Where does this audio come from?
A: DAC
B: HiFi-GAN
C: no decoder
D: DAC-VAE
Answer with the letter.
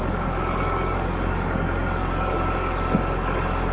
A